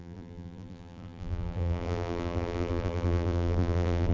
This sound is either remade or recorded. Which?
remade